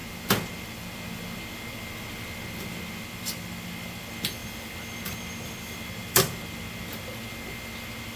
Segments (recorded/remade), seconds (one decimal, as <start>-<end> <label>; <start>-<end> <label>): 0.0-8.2 recorded